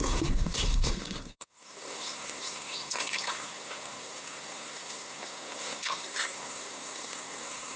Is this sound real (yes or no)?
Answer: no